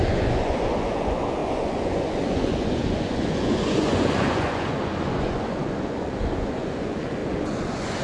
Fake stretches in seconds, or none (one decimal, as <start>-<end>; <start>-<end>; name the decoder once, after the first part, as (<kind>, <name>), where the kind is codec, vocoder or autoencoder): 0.0-8.0 (vocoder, Vocos)